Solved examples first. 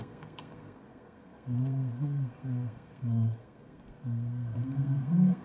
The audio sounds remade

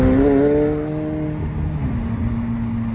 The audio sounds recorded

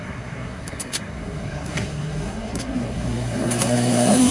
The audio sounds remade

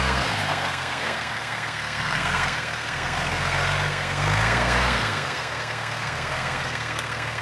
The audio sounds remade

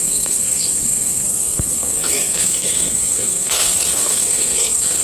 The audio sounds remade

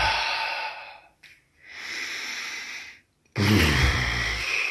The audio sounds recorded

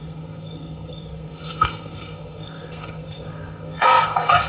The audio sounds remade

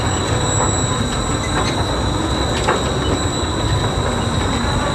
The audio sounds recorded